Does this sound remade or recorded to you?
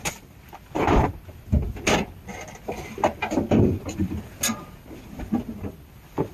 recorded